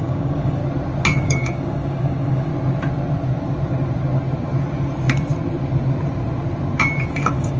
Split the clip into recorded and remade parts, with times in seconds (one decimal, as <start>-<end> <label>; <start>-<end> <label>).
0.0-0.6 remade; 0.6-1.2 recorded; 1.2-2.5 remade; 2.5-7.1 recorded; 7.1-7.6 remade